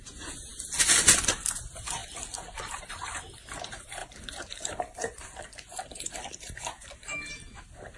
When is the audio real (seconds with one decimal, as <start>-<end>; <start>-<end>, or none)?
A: 0.5-1.3; 2.0-2.6